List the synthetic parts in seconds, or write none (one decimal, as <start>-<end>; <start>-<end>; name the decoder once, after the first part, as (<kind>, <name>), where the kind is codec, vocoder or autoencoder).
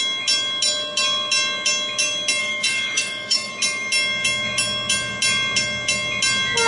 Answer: 2.4-3.5 (codec, DAC)